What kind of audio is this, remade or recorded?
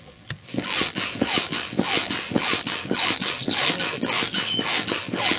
remade